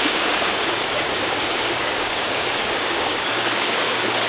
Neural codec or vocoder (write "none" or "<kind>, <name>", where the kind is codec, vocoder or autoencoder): codec, DAC